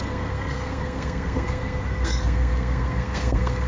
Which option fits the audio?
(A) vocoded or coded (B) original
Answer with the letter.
A